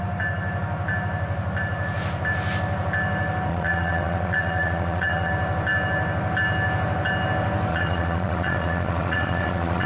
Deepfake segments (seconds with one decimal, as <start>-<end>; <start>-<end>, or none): 3.5-5.3; 7.7-9.9